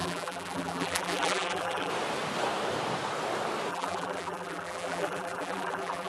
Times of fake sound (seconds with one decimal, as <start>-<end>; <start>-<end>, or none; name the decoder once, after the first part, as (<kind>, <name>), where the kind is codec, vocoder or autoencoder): 0.0-1.9 (vocoder, BigVGAN v2); 3.7-6.1